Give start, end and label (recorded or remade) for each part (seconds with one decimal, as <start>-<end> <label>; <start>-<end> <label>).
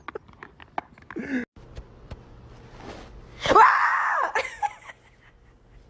0.0-3.9 recorded; 3.9-5.0 remade; 5.0-5.9 recorded